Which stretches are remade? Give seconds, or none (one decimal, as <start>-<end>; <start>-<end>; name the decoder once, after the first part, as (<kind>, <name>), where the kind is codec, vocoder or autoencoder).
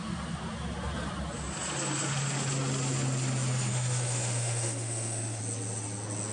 3.7-5.4 (autoencoder, DAC-VAE)